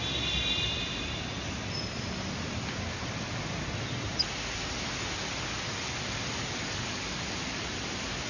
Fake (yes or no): no